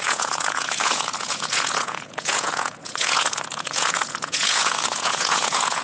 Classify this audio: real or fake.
fake